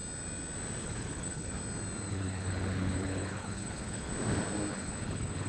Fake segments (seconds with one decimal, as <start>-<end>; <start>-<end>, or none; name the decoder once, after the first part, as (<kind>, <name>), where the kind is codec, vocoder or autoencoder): 0.8-1.6 (codec, HILCodec); 2.1-4.1; 4.7-5.5